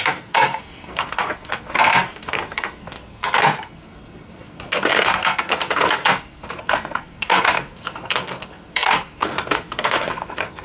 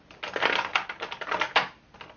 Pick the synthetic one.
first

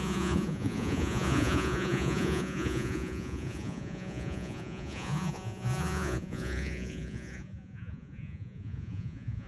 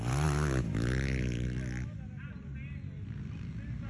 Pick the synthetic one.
first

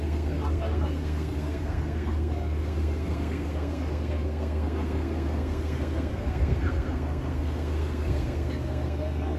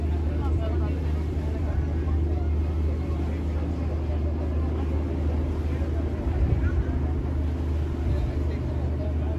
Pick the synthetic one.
first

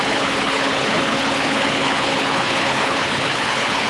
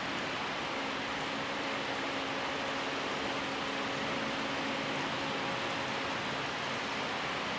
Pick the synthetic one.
first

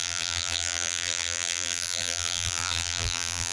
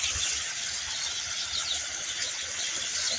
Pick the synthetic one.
first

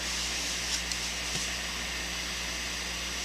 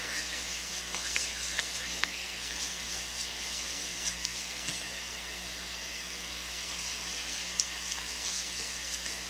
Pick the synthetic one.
second